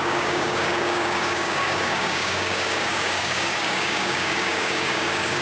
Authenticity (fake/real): fake